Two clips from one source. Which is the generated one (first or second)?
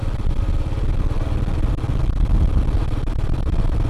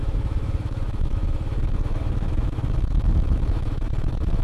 second